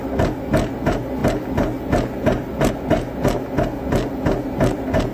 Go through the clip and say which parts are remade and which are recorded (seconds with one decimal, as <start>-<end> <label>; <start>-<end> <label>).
0.0-5.1 recorded